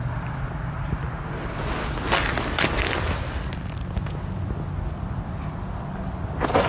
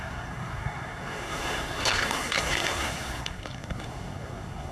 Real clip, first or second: first